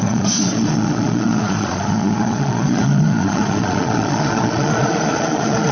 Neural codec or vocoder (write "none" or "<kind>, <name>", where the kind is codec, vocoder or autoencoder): vocoder, Vocos